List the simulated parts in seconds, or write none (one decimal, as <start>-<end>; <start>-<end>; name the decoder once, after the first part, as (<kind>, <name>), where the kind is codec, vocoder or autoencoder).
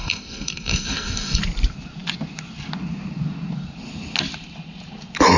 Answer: 0.0-1.4 (codec, SNAC)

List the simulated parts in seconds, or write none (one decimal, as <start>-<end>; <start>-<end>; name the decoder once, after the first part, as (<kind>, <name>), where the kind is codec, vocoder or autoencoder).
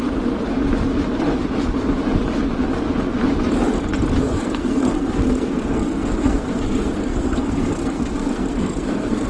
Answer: 4.2-9.3 (codec, SNAC)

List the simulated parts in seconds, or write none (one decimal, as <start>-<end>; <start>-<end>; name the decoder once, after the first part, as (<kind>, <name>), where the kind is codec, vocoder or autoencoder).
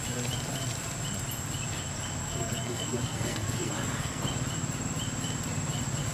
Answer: 2.2-4.2 (codec, SNAC)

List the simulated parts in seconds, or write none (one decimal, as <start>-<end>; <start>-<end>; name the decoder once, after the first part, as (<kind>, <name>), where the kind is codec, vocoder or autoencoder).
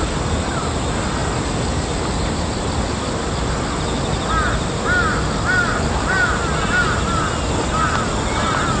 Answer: none